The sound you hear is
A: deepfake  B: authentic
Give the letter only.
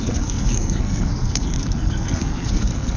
A